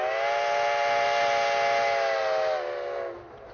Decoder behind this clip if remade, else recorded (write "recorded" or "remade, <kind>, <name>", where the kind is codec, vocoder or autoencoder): recorded